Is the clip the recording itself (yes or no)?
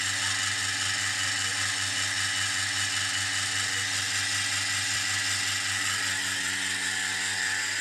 yes